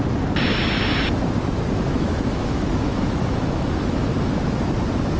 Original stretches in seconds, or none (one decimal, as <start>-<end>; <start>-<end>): 0.0-1.9; 4.4-5.2